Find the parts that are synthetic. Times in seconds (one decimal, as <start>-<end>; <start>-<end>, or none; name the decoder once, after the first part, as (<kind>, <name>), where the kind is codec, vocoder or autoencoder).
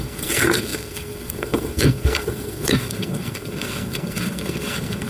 0.0-5.1 (codec, SNAC)